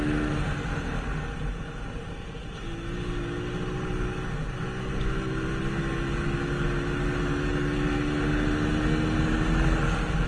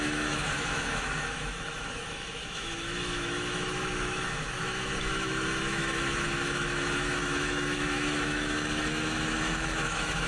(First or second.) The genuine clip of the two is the first